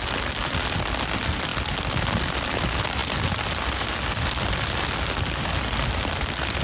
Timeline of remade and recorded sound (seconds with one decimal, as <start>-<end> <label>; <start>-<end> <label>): 0.0-6.6 recorded